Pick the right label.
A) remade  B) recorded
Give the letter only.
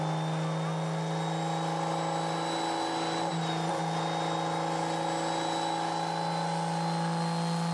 B